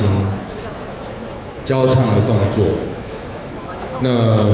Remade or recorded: remade